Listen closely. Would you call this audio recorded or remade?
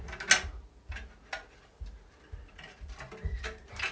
recorded